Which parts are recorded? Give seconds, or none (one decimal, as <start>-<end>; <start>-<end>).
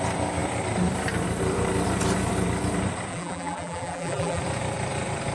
0.0-3.1; 4.4-5.3